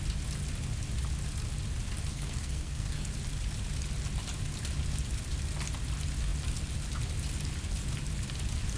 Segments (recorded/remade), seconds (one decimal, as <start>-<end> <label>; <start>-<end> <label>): 0.0-2.1 recorded; 2.1-3.1 remade; 3.1-8.8 recorded